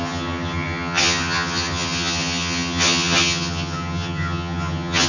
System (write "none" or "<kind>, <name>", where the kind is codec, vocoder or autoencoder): vocoder, HiFi-GAN